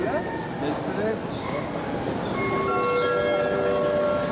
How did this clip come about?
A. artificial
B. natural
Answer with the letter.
B